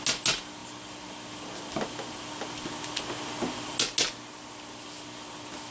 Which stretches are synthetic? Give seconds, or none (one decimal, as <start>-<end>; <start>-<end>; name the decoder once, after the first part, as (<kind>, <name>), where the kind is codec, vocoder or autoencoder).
none